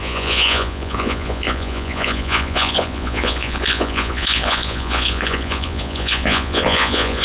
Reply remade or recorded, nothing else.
remade